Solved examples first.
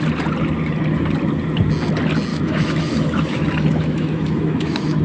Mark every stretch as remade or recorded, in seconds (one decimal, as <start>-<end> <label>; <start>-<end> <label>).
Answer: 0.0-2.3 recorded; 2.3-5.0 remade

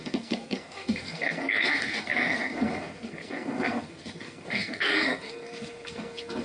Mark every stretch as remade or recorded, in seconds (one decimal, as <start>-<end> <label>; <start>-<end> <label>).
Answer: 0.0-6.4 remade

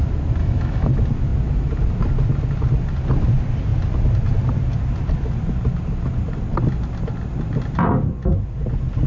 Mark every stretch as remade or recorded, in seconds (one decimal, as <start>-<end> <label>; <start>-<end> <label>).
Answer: 0.0-0.4 recorded; 0.4-0.9 remade; 0.9-9.1 recorded